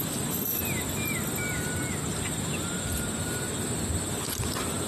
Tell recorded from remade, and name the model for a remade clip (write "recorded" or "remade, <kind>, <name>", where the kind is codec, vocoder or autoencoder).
recorded